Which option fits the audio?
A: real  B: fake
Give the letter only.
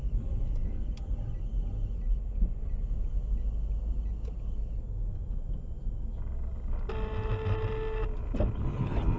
A